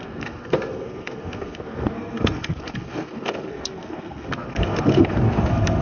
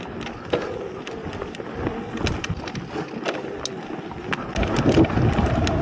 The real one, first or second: second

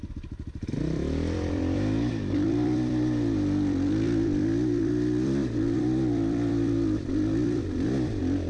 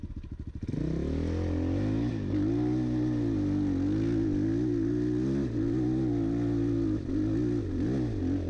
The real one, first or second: second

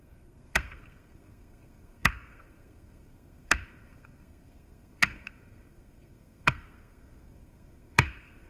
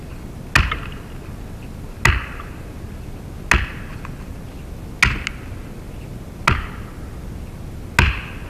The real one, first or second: second